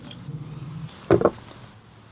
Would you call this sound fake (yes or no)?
no